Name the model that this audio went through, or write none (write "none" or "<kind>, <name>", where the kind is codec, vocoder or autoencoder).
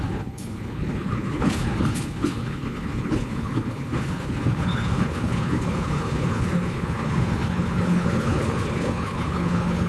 codec, HILCodec